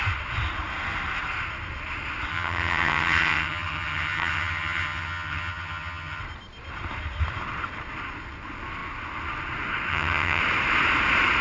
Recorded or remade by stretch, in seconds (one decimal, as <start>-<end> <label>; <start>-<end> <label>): 0.0-2.3 recorded; 2.3-6.2 remade; 6.2-9.9 recorded; 9.9-10.4 remade; 10.4-11.4 recorded